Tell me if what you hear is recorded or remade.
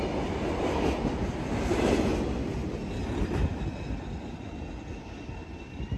recorded